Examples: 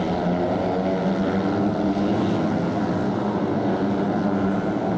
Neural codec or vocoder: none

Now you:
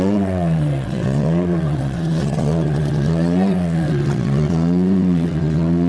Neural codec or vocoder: vocoder, WaveNeXt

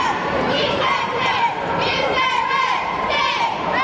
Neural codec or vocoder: vocoder, BigVGAN v2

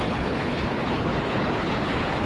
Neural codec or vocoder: codec, HILCodec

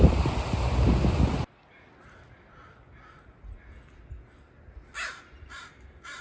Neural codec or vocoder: none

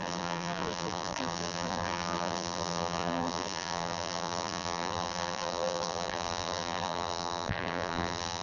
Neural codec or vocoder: vocoder, BigVGAN v2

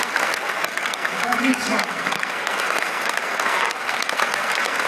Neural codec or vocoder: codec, SNAC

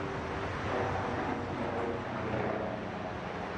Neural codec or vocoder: none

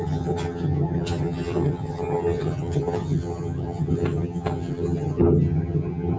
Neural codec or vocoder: vocoder, HiFi-GAN